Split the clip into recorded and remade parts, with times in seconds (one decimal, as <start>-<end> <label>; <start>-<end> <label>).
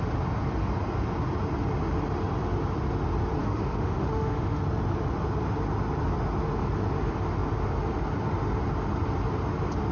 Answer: 0.0-3.4 recorded; 3.4-4.6 remade; 4.6-9.9 recorded